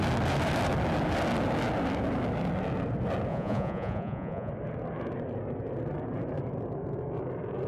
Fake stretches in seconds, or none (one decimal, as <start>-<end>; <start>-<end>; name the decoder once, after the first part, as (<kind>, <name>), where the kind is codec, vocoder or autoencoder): 3.3-4.5 (vocoder, Vocos)